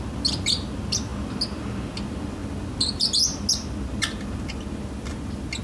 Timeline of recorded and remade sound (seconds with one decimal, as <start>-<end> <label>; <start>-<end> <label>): 0.0-5.6 recorded